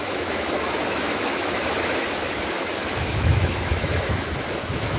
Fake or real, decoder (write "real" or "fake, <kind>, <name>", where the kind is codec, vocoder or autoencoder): fake, autoencoder, DAC-VAE